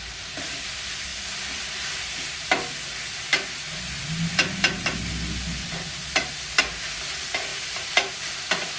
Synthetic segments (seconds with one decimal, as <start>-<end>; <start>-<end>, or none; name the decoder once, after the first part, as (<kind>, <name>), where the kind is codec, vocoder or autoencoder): 1.1-2.0 (vocoder, BigVGAN v2); 7.5-8.1